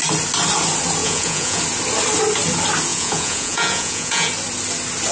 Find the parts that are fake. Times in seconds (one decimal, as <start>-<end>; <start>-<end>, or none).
1.0-1.6; 2.9-4.3